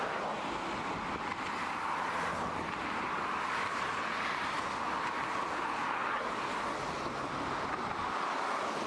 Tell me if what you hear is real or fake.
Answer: real